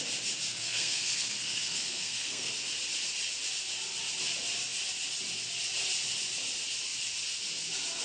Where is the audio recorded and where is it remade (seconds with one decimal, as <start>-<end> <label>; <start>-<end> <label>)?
0.0-0.5 recorded; 0.5-2.5 remade; 2.5-8.0 recorded